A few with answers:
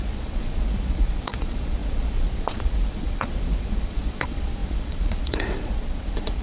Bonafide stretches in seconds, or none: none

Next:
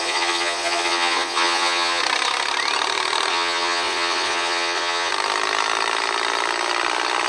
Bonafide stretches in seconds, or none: 2.0-3.3; 5.1-7.3